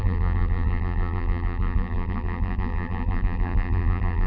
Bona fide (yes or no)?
no